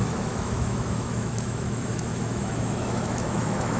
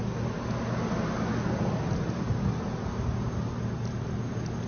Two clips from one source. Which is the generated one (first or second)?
first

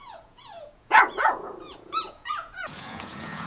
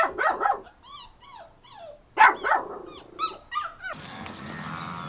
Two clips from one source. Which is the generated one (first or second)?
first